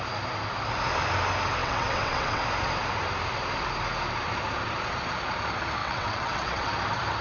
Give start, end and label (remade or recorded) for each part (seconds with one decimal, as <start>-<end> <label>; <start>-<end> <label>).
0.0-1.6 recorded; 1.6-2.4 remade; 2.4-5.8 recorded; 5.8-6.7 remade; 6.7-7.2 recorded